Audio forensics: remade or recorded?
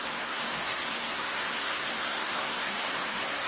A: remade